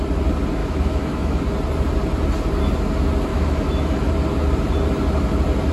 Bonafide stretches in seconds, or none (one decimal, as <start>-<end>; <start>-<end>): 0.0-0.6; 1.4-3.3; 4.1-5.7